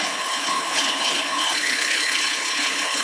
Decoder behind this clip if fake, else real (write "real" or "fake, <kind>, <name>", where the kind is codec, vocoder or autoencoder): fake, codec, HILCodec